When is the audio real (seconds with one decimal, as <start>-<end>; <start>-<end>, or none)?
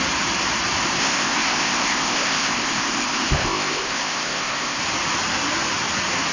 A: 0.0-1.0; 4.8-6.3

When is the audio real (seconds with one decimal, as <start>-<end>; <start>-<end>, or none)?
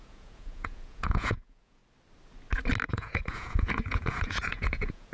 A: 1.8-2.9